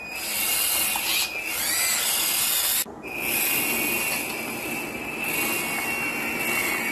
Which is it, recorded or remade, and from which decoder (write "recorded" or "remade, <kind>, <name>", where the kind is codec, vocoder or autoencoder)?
recorded